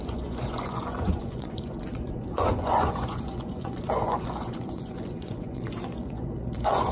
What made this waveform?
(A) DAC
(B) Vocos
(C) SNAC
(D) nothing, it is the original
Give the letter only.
B